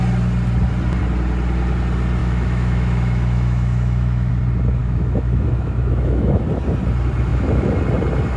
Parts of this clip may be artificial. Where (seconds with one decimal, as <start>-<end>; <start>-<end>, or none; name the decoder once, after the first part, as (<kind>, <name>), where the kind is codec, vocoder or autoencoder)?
2.2-4.3 (autoencoder, DAC-VAE); 4.8-6.4; 7.3-7.8